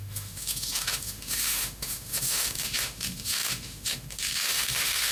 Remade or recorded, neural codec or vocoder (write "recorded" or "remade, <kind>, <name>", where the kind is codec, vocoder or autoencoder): remade, autoencoder, DAC-VAE